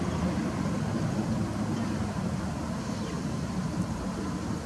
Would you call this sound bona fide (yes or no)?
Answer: yes